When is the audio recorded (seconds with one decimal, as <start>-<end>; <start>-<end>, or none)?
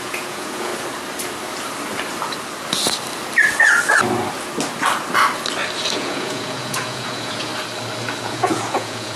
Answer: 0.7-5.9; 7.5-8.2